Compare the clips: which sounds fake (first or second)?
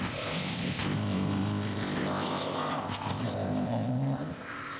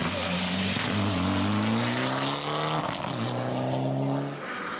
first